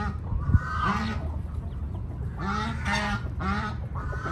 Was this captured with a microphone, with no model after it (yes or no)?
yes